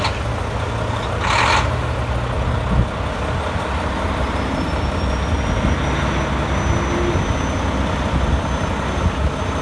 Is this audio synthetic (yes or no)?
no